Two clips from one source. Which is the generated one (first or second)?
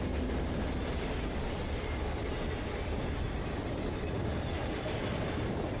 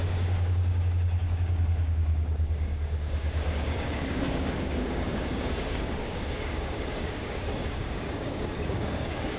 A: second